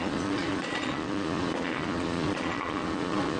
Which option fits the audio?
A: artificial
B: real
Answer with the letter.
A